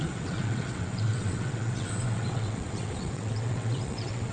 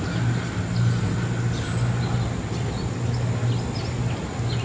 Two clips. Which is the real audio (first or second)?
second